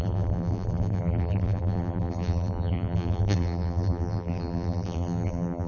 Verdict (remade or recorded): remade